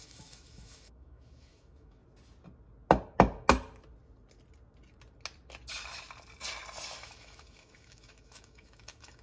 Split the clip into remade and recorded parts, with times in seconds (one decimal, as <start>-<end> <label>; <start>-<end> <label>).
0.0-2.0 remade; 2.0-7.0 recorded; 7.0-9.2 remade